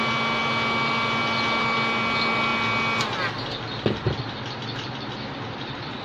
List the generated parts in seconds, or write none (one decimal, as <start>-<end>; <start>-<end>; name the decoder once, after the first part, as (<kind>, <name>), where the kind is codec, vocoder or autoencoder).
none